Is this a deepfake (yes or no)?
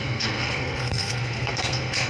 yes